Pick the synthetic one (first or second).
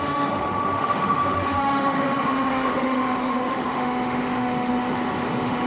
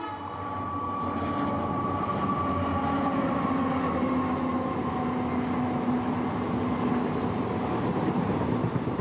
first